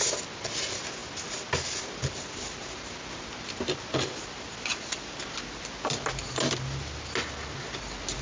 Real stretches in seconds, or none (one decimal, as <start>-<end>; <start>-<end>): 0.0-8.2

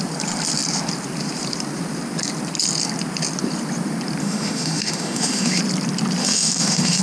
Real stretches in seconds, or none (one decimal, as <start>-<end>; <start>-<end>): 0.0-4.2; 5.6-6.2

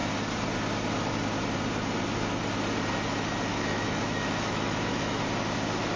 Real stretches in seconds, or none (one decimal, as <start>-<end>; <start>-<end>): 0.0-3.5; 5.2-6.0

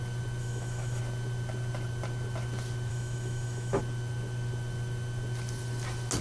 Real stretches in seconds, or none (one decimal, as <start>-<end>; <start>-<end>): 0.0-0.4; 1.0-2.9; 3.8-6.2

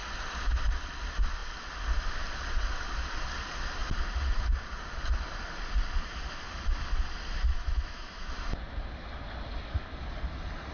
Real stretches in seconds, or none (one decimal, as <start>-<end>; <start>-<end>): 0.0-7.5; 8.3-10.7

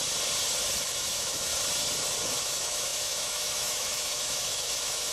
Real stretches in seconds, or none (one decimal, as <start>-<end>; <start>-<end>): 0.0-0.8; 1.5-2.4

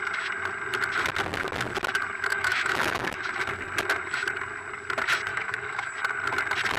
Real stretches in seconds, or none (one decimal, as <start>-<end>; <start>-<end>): 0.0-2.3; 3.2-5.3; 5.9-6.8